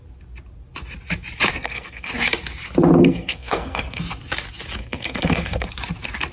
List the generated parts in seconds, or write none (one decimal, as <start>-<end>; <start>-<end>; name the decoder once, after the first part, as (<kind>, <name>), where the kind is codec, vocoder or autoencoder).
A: 1.5-2.1 (codec, SNAC); 3.0-4.0; 4.8-5.7